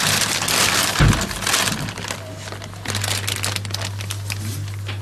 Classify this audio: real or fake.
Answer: real